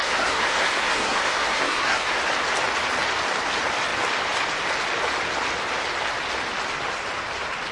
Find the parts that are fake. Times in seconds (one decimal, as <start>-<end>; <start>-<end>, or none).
0.0-2.2